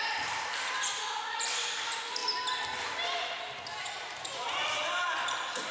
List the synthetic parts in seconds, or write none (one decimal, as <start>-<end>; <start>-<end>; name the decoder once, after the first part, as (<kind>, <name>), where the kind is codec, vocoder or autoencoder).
0.0-2.2 (vocoder, BigVGAN v2); 4.0-5.7